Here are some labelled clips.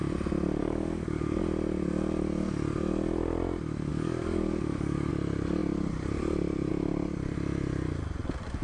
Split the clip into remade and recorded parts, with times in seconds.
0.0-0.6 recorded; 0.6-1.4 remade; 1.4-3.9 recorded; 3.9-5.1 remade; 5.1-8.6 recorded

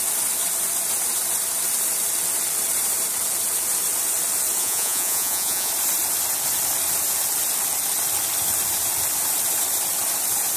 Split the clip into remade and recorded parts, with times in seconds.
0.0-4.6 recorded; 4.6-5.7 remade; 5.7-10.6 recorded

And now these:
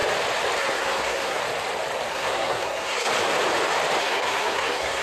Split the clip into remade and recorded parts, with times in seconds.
0.0-0.6 recorded; 0.6-1.4 remade; 1.4-2.1 recorded; 2.1-3.1 remade; 3.1-4.0 recorded; 4.0-5.0 remade

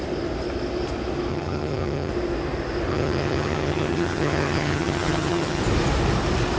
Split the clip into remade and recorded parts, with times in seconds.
0.0-1.3 recorded; 1.3-2.1 remade; 2.1-2.9 recorded; 2.9-5.6 remade; 5.6-6.6 recorded

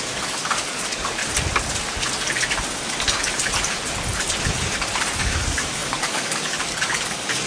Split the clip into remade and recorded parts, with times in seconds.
0.0-1.2 remade; 1.2-5.2 recorded; 5.2-7.5 remade

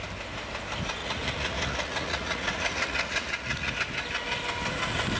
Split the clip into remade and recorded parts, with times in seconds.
0.0-1.0 recorded; 1.0-3.7 remade; 3.7-5.2 recorded

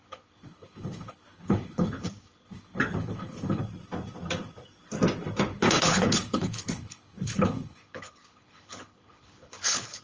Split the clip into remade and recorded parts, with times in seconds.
0.0-3.6 remade; 3.6-5.5 recorded; 5.5-10.0 remade